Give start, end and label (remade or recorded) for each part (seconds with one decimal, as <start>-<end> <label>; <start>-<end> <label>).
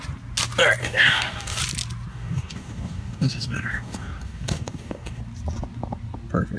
0.0-0.8 recorded; 0.8-1.6 remade; 1.6-2.1 recorded; 2.1-5.2 remade; 5.2-6.6 recorded